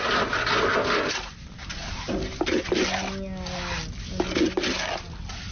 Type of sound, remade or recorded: recorded